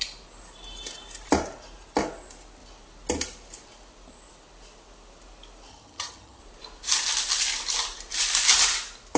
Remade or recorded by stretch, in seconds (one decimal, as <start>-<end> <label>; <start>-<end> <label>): 0.0-5.7 recorded; 5.7-6.4 remade; 6.4-9.2 recorded